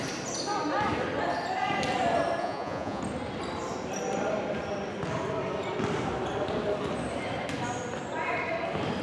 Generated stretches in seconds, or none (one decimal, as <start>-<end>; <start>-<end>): 2.4-3.0

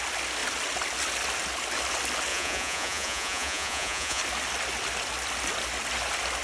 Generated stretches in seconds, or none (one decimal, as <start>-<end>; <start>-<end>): 2.3-4.2

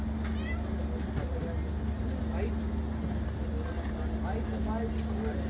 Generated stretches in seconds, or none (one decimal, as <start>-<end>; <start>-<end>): none

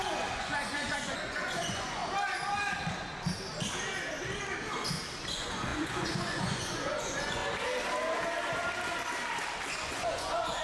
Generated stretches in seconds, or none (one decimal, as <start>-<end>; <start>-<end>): 0.0-2.0; 5.3-7.4; 9.7-10.6

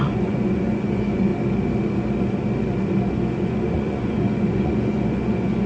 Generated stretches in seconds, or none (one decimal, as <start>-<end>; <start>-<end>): 0.0-1.3; 3.1-5.7

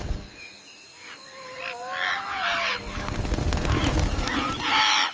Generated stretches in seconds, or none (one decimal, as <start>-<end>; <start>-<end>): none